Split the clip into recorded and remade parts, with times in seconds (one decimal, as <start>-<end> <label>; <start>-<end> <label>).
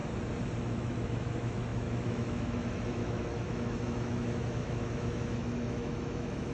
0.0-0.6 recorded; 0.6-6.5 remade